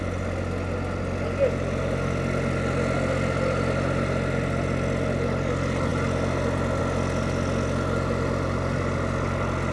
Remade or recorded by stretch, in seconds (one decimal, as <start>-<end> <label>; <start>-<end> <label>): 0.0-9.7 recorded